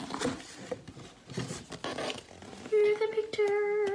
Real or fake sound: real